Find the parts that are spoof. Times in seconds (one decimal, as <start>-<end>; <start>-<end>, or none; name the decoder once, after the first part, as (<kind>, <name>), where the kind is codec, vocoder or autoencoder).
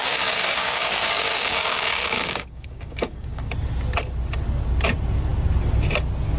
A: 0.0-3.5 (codec, DAC)